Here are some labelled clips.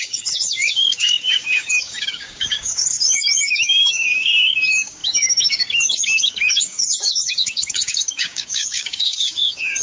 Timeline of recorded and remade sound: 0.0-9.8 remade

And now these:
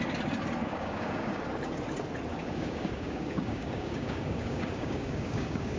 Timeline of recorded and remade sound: 0.0-0.6 recorded; 0.6-1.4 remade; 1.4-2.3 recorded; 2.3-5.8 remade